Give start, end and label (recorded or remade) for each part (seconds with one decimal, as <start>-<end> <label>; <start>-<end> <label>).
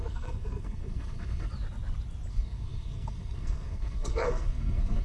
0.0-1.5 remade; 1.5-2.3 recorded; 2.3-5.0 remade